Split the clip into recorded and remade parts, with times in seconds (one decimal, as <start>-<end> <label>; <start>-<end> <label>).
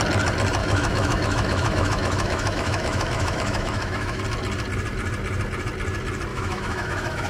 0.0-0.6 recorded; 0.6-4.2 remade; 4.2-6.3 recorded; 6.3-7.3 remade